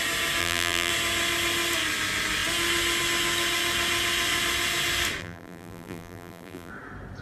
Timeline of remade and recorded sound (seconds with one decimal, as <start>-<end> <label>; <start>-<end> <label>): 0.0-0.4 recorded; 0.4-0.9 remade; 0.9-5.2 recorded; 5.2-6.7 remade; 6.7-7.2 recorded